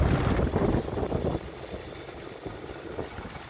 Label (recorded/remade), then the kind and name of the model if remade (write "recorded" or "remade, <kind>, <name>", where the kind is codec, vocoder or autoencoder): recorded